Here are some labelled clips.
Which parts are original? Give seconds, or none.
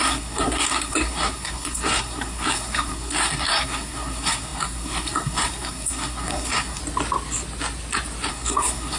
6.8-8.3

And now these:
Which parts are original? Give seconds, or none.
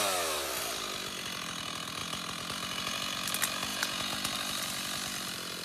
0.0-3.7; 4.3-5.6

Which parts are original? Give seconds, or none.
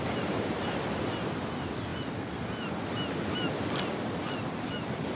0.0-5.1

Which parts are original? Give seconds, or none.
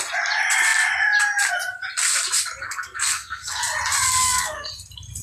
0.0-2.6; 3.6-4.2; 4.7-5.2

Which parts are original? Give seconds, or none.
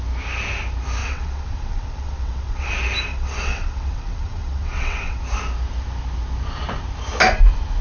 0.0-1.0; 2.7-3.1; 5.2-7.8